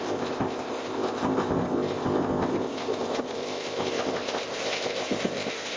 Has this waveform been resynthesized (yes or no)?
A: yes